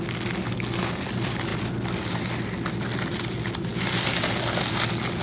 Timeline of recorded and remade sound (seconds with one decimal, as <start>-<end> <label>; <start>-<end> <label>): 0.0-5.2 recorded